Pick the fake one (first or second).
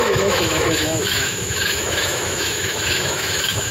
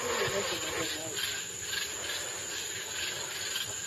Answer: first